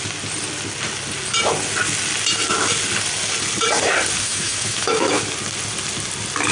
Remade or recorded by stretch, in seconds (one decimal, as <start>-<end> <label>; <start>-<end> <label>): 0.0-4.2 recorded; 4.2-5.2 remade; 5.2-6.5 recorded